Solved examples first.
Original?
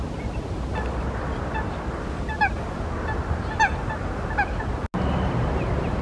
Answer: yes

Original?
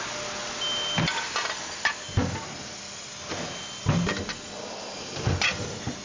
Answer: yes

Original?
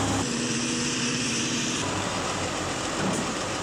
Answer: no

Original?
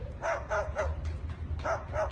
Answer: yes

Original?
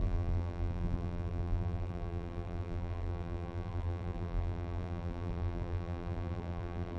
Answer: no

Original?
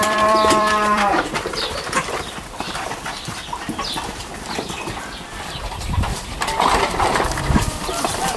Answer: no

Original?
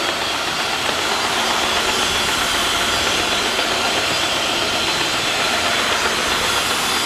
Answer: no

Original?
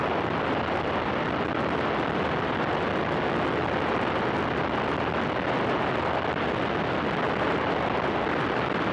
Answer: yes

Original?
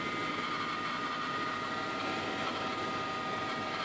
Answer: yes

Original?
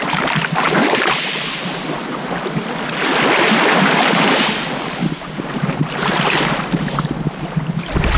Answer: no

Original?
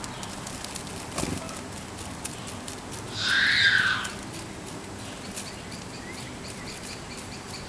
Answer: yes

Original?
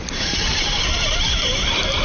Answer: no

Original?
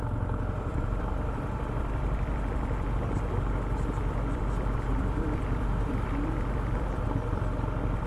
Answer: no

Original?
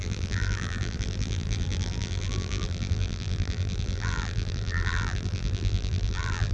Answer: no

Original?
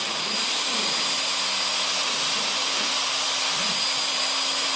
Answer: no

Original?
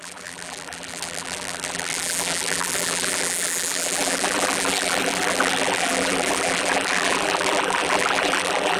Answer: no